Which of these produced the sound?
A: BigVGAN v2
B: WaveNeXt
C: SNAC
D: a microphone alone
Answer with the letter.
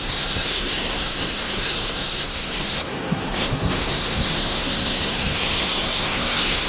C